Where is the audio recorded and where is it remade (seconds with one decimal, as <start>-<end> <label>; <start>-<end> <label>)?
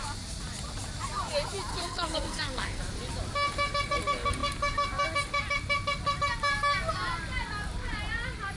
0.0-1.7 recorded; 1.7-2.8 remade; 2.8-8.6 recorded